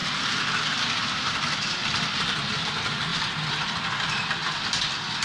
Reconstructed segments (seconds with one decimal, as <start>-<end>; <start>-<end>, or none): none